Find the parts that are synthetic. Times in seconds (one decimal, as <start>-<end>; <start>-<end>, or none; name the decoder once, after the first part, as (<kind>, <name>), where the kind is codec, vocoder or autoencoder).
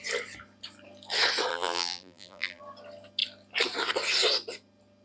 1.5-2.6 (vocoder, BigVGAN v2)